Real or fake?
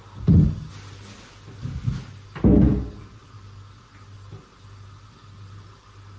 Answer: real